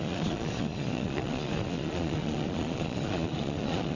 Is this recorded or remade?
remade